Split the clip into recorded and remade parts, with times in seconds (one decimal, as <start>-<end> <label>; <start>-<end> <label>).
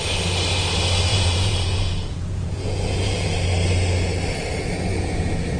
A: 0.0-1.1 recorded; 1.1-3.3 remade; 3.3-4.9 recorded; 4.9-5.6 remade